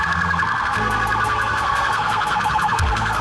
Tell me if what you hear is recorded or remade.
remade